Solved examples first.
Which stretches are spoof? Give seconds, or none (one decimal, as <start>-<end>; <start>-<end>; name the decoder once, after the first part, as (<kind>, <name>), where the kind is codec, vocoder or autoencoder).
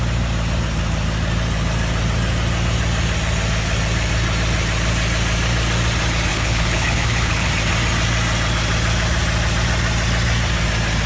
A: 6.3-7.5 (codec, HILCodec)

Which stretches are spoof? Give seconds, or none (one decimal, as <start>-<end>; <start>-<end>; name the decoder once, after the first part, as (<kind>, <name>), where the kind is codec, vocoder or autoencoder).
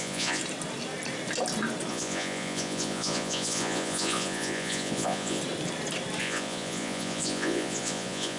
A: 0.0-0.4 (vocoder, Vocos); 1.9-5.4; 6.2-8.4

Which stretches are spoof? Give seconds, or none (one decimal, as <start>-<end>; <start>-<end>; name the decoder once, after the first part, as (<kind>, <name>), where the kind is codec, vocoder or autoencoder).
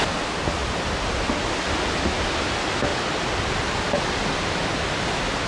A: none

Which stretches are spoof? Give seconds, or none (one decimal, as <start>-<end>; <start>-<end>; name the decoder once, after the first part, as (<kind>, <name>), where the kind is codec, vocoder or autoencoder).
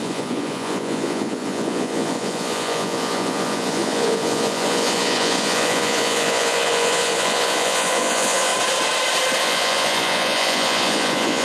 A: 0.0-8.5 (vocoder, Vocos); 9.4-11.4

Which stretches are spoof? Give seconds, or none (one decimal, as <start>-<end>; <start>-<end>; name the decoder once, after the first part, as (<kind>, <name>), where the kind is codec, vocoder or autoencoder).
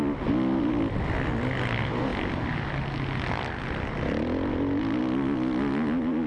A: none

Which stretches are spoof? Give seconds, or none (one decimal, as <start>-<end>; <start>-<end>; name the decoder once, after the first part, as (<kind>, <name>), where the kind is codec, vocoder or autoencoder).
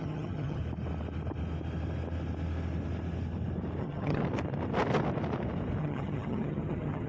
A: 0.0-0.6 (vocoder, HiFi-GAN); 3.8-4.2; 5.8-7.1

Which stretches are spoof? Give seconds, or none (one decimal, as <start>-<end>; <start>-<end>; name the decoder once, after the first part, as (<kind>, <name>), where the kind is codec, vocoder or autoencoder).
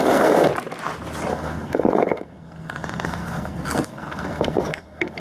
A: 0.0-0.5 (codec, SNAC); 1.3-5.2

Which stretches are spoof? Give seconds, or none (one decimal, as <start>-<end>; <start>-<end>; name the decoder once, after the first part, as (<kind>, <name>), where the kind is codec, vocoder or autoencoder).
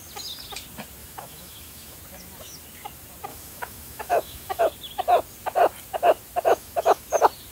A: 1.0-2.0 (autoencoder, DAC-VAE); 3.3-4.6; 6.5-7.1